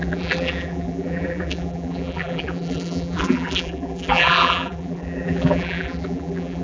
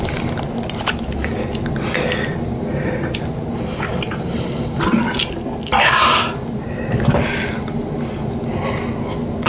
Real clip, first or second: second